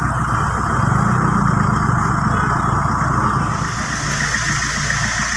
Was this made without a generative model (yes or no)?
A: yes